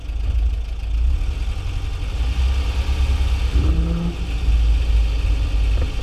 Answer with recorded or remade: recorded